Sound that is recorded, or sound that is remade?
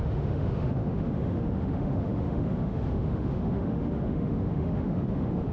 remade